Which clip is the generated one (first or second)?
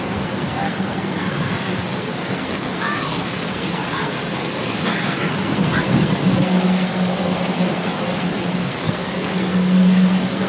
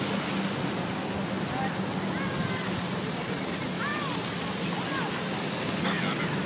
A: first